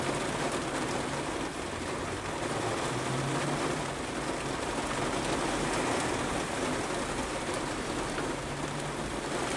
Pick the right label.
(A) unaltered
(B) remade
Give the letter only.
A